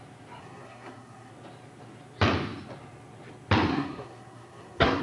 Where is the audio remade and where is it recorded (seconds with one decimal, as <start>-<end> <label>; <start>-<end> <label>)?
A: 0.0-0.4 recorded; 0.4-1.3 remade; 1.3-3.7 recorded; 3.7-5.0 remade